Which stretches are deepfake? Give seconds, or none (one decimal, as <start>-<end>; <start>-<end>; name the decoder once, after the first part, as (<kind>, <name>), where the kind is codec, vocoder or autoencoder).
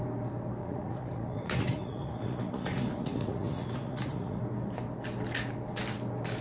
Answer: 0.6-4.4 (vocoder, Vocos)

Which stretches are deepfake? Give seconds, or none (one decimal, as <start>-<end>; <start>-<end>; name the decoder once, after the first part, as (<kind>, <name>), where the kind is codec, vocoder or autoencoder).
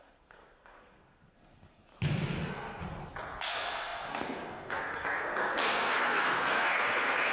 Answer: 0.0-1.9 (codec, SNAC); 2.4-2.8; 3.5-7.3